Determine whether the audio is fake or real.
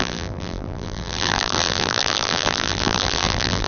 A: fake